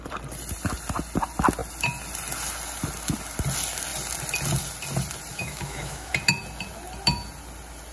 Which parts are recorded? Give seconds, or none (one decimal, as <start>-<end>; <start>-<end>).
0.0-5.3; 6.1-7.9